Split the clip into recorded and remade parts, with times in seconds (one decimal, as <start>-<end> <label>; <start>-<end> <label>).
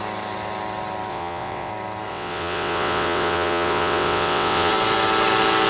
0.0-1.1 recorded; 1.1-1.7 remade; 1.7-2.1 recorded; 2.1-4.7 remade; 4.7-5.7 recorded